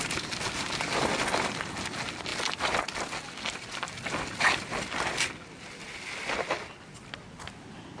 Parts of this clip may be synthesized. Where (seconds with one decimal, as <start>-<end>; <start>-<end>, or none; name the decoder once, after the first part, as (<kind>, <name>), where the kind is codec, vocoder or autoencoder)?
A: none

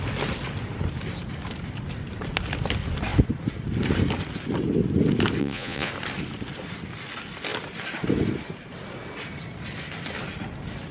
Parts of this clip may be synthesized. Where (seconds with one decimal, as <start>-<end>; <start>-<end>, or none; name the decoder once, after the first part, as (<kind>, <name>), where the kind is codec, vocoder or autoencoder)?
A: 5.4-5.9 (vocoder, Vocos)

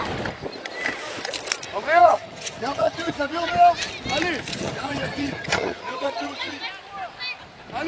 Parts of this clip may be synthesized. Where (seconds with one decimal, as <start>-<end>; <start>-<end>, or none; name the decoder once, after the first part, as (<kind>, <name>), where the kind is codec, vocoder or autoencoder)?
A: 2.0-3.5 (vocoder, HiFi-GAN); 4.5-6.6

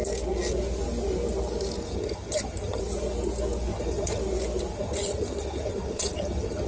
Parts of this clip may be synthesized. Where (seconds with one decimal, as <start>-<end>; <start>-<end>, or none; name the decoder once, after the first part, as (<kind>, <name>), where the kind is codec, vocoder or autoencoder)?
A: 1.8-2.8 (vocoder, HiFi-GAN); 3.7-4.2; 4.7-6.7